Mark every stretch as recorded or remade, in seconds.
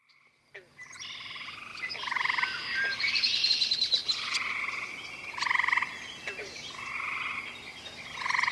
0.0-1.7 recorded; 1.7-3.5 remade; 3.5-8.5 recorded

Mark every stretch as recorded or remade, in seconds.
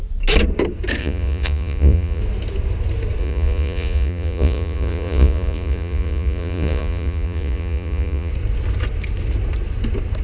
0.0-1.0 recorded; 1.0-2.2 remade; 2.2-3.2 recorded; 3.2-8.3 remade; 8.3-10.2 recorded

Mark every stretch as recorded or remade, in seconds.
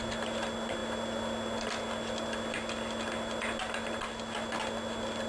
0.0-5.3 recorded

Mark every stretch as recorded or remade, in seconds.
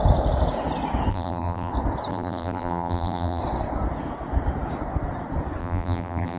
0.0-1.1 recorded; 1.1-1.7 remade; 1.7-2.1 recorded; 2.1-3.4 remade; 3.4-5.6 recorded; 5.6-6.4 remade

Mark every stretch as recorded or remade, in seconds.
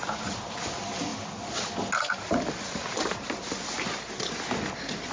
0.0-5.1 recorded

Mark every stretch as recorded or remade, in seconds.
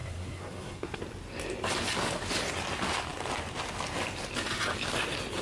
0.0-1.0 remade; 1.0-5.4 recorded